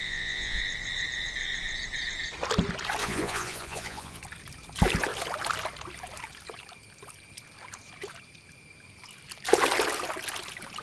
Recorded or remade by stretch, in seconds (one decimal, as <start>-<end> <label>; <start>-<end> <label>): 0.0-0.6 remade; 0.6-3.0 recorded; 3.0-4.2 remade; 4.2-10.8 recorded